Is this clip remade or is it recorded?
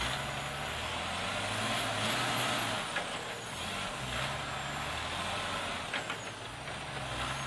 recorded